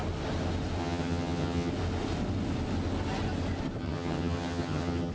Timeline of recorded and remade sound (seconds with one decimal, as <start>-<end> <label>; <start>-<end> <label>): 0.0-0.8 recorded; 0.8-1.7 remade; 1.7-3.8 recorded; 3.8-5.1 remade